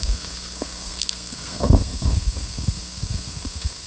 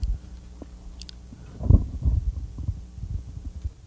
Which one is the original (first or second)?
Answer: second